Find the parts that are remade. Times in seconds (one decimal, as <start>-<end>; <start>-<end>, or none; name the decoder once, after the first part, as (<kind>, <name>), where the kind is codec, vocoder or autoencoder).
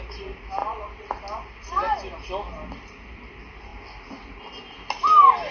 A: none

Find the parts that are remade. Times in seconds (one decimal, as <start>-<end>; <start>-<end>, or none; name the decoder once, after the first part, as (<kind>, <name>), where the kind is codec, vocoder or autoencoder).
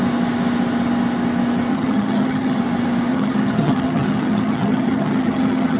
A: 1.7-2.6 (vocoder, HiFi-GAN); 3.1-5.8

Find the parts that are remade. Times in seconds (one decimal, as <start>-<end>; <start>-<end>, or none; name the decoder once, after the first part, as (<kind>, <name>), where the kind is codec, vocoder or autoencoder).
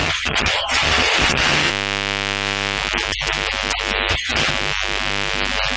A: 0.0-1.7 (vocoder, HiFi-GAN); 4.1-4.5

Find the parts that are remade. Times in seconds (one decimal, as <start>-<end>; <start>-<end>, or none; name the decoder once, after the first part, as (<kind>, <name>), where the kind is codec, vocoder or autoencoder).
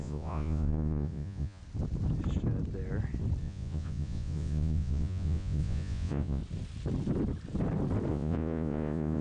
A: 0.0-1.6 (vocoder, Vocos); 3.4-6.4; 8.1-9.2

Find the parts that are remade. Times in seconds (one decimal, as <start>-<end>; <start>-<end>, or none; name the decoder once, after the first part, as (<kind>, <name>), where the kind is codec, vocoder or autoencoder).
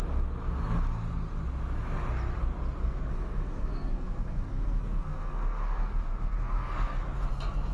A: 2.8-7.3 (codec, SNAC)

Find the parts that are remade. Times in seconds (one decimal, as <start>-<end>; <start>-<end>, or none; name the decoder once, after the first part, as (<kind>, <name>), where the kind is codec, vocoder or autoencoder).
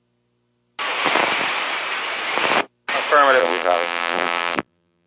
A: 3.4-5.1 (vocoder, BigVGAN v2)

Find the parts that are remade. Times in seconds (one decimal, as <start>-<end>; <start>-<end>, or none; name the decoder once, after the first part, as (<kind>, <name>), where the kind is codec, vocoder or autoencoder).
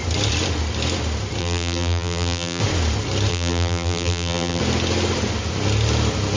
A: 1.4-2.6 (vocoder, BigVGAN v2); 3.3-4.6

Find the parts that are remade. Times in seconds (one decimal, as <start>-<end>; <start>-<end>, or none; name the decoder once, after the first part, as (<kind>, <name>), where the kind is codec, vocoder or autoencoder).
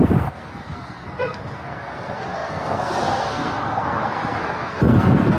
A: 0.0-5.4 (codec, SNAC)